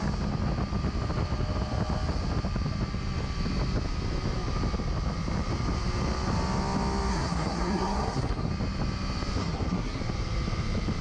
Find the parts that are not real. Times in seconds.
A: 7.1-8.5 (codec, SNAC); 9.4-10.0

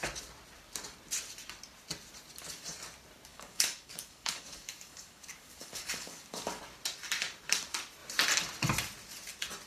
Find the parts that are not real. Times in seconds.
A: 3.3-6.6 (codec, DAC)

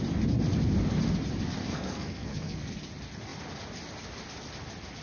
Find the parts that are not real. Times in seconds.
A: 1.6-2.7 (codec, SNAC)